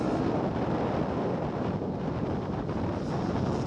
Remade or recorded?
recorded